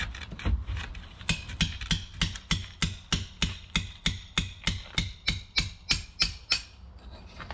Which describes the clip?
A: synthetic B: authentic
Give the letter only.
B